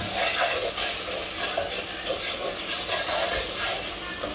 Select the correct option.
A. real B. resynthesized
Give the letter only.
A